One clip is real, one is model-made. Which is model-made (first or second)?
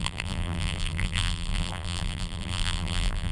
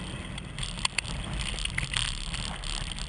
first